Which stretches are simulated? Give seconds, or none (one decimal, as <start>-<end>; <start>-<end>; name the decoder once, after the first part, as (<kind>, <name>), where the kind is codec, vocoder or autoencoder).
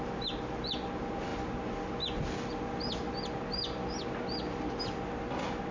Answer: none